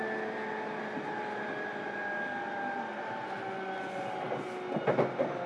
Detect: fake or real real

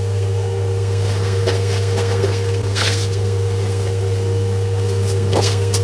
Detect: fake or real fake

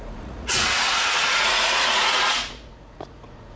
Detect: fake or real fake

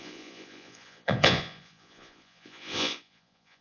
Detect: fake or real fake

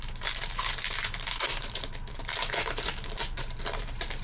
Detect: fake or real fake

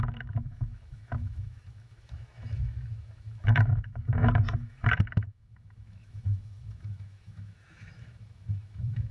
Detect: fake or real fake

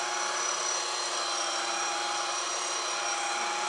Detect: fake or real fake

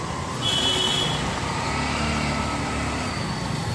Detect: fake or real real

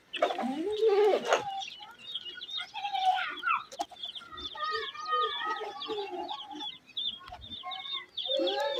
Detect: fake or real real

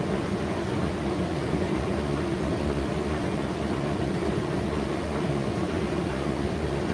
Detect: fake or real fake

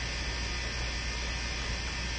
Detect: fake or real real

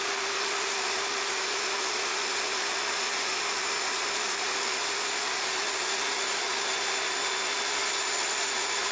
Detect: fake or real real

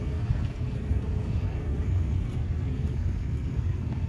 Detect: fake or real fake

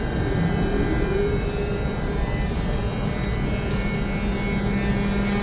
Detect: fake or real real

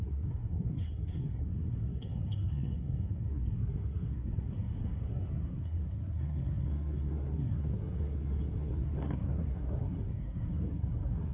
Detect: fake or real fake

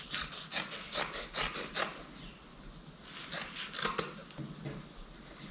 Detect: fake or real real